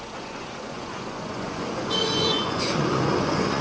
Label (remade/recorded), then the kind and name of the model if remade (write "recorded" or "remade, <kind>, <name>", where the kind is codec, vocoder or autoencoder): remade, vocoder, Vocos